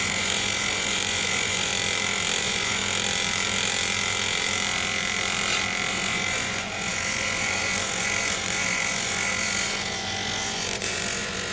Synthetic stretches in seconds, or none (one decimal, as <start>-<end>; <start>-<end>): 0.0-1.7; 2.4-2.8; 5.9-11.5